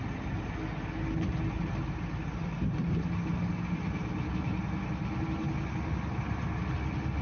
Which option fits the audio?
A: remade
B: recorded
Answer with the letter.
B